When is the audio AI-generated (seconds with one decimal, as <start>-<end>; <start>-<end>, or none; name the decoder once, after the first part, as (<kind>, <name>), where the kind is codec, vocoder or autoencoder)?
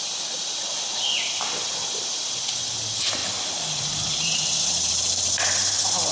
3.2-5.3 (vocoder, BigVGAN v2)